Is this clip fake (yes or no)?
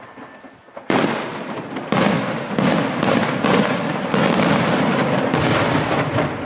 no